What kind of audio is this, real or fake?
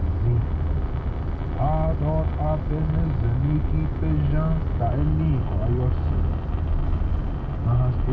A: real